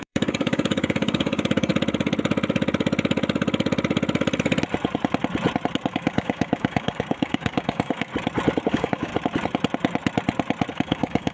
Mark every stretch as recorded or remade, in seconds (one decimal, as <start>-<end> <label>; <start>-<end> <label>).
0.0-1.7 remade; 1.7-5.9 recorded; 5.9-8.1 remade; 8.1-8.7 recorded; 8.7-9.1 remade; 9.1-10.7 recorded; 10.7-11.3 remade